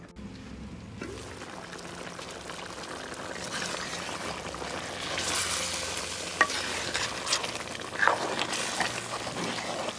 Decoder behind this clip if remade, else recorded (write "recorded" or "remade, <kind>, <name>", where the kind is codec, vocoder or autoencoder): recorded